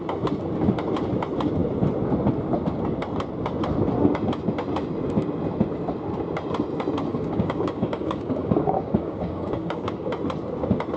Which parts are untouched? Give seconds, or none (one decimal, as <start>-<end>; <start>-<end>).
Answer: 0.0-7.1; 10.1-11.0